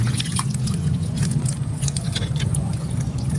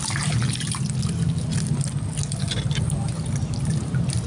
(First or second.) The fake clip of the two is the first